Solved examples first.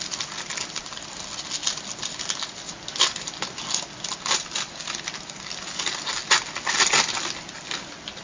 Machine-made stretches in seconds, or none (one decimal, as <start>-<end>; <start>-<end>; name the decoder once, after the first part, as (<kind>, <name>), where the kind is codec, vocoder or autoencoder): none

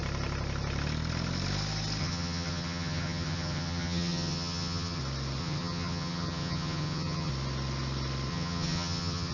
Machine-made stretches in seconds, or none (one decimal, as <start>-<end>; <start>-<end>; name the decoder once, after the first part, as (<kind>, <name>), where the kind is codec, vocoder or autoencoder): 2.0-5.0 (vocoder, HiFi-GAN); 5.4-7.3; 8.3-9.3

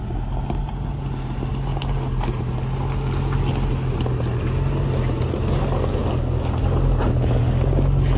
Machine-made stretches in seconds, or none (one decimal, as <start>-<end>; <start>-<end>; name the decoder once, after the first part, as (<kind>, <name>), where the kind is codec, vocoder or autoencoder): none

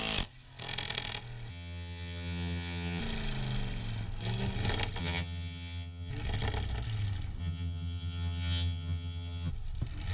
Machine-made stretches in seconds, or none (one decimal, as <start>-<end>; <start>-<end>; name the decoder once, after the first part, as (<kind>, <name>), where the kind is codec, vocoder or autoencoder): 1.5-3.0 (vocoder, HiFi-GAN); 5.0-6.1; 7.4-9.5

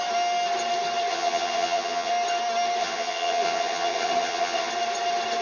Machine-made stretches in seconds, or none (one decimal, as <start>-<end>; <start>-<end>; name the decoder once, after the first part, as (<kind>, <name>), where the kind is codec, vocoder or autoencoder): 1.1-2.1 (vocoder, HiFi-GAN); 2.8-4.7